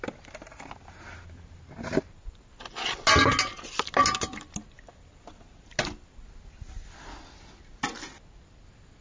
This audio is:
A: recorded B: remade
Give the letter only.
A